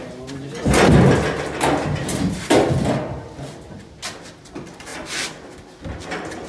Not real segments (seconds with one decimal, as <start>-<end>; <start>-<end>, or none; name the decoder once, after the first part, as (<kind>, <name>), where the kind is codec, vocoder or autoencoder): none